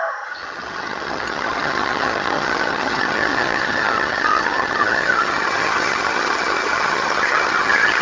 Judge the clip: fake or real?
fake